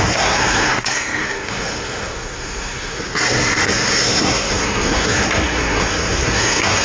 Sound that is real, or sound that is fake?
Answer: fake